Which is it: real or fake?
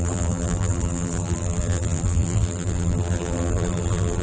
fake